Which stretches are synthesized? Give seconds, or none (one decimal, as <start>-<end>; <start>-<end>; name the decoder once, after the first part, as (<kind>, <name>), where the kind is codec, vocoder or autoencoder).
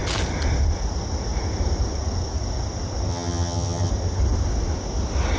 3.1-3.9 (vocoder, HiFi-GAN)